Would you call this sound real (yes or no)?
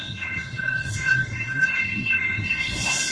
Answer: no